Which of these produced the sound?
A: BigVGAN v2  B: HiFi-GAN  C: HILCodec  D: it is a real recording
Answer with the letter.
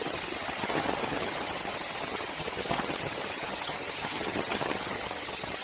B